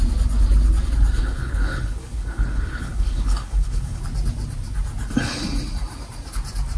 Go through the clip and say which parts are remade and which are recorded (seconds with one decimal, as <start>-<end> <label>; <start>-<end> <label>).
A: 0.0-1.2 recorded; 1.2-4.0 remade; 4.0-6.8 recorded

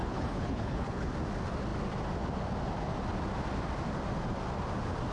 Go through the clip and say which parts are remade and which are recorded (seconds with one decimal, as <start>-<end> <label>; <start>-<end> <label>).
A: 0.0-1.1 remade; 1.1-5.1 recorded

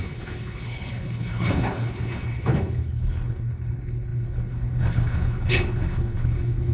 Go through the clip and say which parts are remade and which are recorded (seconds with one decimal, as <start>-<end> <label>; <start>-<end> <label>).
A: 0.0-6.7 remade

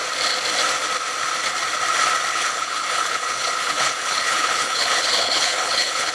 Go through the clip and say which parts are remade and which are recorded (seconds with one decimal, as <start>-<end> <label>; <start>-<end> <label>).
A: 0.0-2.3 recorded; 2.3-6.1 remade